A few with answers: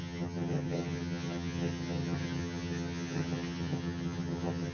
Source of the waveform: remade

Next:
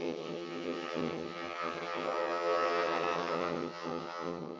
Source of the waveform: remade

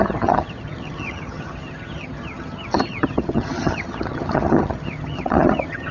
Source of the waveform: remade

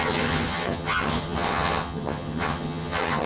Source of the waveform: remade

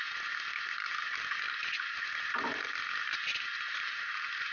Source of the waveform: recorded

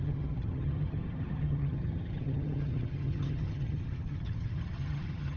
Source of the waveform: remade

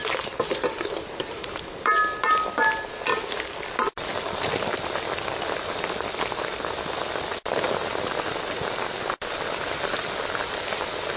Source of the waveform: recorded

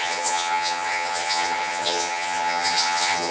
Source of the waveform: remade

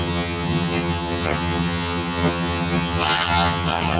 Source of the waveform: remade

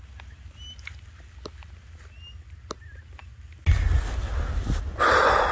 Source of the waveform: recorded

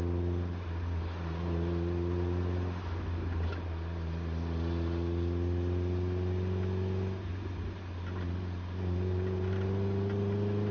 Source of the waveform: recorded